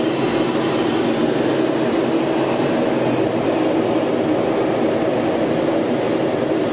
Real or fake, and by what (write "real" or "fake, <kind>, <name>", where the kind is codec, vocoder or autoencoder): real